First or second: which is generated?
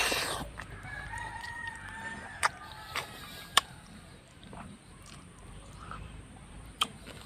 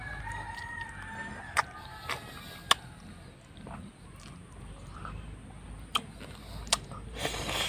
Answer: first